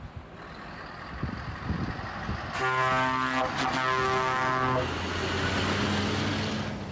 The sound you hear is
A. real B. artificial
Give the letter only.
A